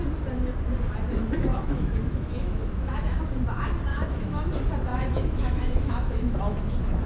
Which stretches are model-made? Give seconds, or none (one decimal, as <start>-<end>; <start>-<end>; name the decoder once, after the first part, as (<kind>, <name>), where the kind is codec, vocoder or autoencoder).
1.5-3.2 (autoencoder, DAC-VAE); 3.9-4.5; 4.9-7.1